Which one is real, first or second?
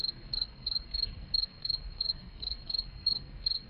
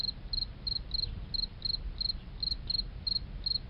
second